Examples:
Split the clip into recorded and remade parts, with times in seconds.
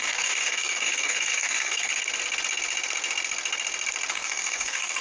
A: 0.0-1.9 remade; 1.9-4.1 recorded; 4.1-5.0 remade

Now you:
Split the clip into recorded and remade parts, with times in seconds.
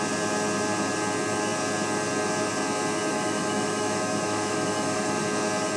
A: 0.0-3.1 recorded; 3.1-5.2 remade; 5.2-5.8 recorded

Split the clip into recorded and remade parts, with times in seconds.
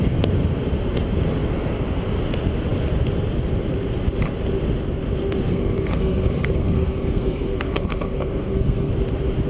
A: 0.0-5.5 recorded; 5.5-8.9 remade; 8.9-9.5 recorded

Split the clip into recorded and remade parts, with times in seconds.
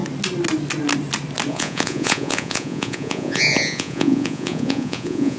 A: 0.0-1.5 recorded; 1.5-5.4 remade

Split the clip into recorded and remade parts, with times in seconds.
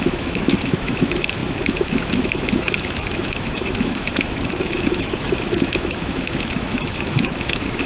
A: 0.0-7.9 remade